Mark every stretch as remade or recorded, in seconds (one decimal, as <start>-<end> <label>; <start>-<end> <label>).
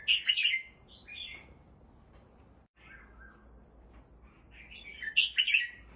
0.0-6.0 recorded